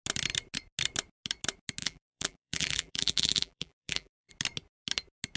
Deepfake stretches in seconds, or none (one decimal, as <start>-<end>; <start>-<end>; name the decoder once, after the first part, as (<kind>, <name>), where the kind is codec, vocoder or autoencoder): 1.8-4.3 (vocoder, BigVGAN v2)